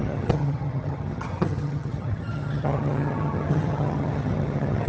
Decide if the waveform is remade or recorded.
remade